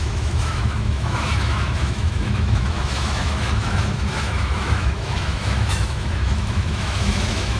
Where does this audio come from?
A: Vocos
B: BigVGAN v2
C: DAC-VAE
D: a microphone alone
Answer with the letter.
C